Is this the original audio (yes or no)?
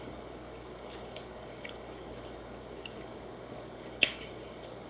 no